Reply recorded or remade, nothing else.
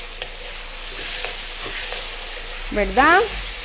recorded